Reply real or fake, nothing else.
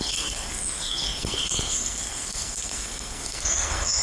fake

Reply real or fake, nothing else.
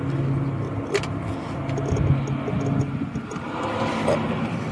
real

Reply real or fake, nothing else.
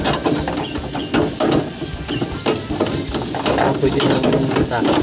real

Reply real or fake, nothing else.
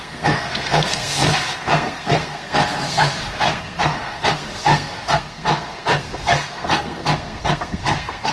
fake